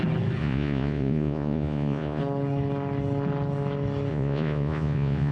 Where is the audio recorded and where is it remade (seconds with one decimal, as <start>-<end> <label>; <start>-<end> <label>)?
0.0-0.4 recorded; 0.4-2.2 remade; 2.2-4.1 recorded; 4.1-5.3 remade